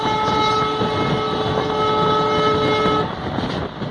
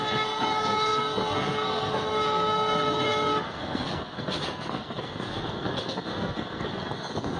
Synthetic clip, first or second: second